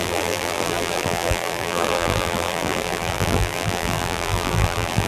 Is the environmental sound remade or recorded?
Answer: remade